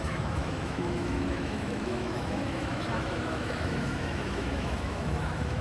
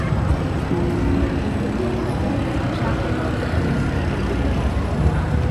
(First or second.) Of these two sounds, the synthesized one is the first